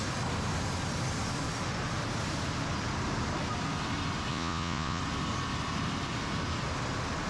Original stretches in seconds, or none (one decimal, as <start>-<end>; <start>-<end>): 0.0-4.3; 5.0-7.3